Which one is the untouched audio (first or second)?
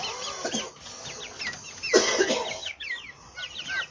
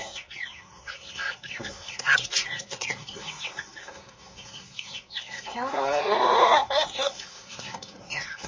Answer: first